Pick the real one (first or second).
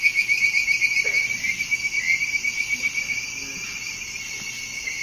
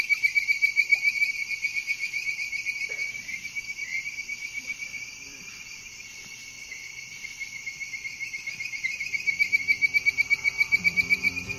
first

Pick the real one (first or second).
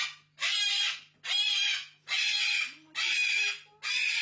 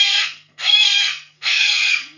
first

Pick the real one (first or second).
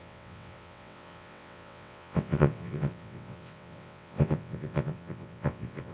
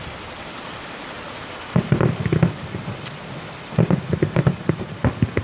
second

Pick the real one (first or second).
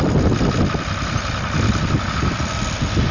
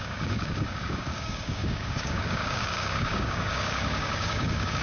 first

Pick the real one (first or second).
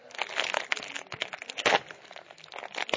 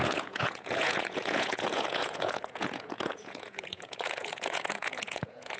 first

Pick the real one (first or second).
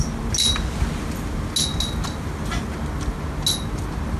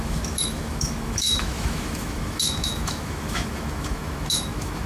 first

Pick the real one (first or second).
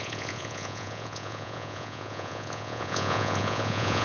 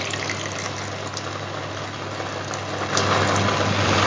second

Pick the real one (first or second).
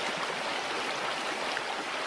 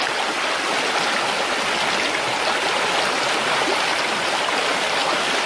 first